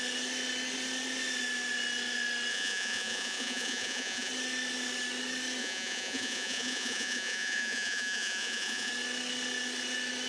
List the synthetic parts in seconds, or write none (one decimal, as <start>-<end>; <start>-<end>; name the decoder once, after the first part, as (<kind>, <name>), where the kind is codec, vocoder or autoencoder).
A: 2.5-4.3 (vocoder, Vocos); 5.6-8.9